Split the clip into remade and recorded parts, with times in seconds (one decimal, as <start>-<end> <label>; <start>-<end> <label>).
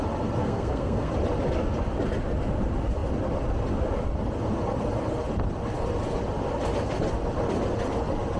0.0-0.4 recorded; 0.4-1.1 remade; 1.1-8.4 recorded